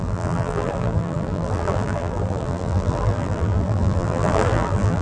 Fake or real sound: fake